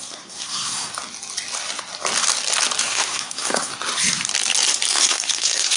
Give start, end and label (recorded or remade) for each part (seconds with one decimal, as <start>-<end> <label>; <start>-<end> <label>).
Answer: 0.0-0.9 remade; 0.9-2.8 recorded; 2.8-3.7 remade; 3.7-4.9 recorded; 4.9-5.8 remade